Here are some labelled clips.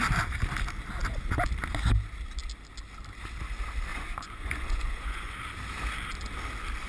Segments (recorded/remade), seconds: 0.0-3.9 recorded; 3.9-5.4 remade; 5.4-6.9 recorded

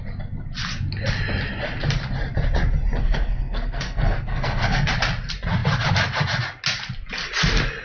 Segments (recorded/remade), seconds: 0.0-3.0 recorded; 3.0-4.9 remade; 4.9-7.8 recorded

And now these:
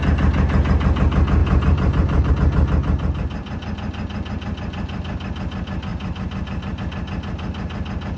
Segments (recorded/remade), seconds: 0.0-1.4 recorded; 1.4-2.3 remade; 2.3-5.9 recorded; 5.9-6.8 remade; 6.8-8.2 recorded

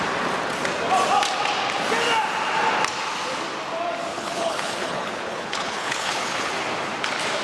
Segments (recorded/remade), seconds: 0.0-4.1 recorded; 4.1-6.5 remade; 6.5-7.4 recorded